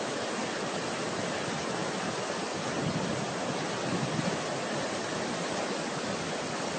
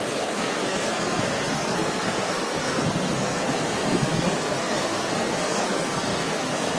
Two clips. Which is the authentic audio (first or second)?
first